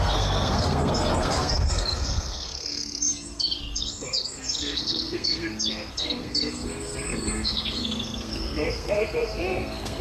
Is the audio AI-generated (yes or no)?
yes